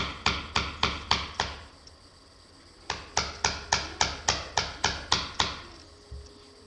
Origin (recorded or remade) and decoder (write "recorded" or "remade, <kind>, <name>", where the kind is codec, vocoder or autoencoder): recorded